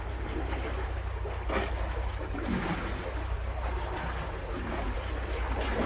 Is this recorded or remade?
recorded